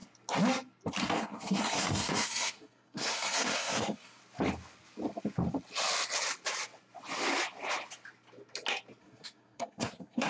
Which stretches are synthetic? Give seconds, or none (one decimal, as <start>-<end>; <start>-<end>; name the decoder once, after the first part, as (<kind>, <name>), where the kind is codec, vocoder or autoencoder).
1.0-4.2 (codec, SNAC); 9.0-10.3